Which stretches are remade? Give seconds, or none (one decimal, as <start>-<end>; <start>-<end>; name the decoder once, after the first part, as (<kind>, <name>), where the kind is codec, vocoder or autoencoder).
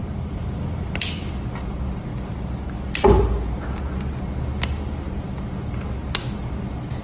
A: none